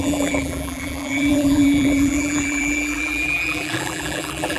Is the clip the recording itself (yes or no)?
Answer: no